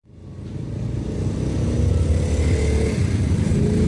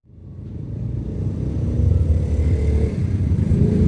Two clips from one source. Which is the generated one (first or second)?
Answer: second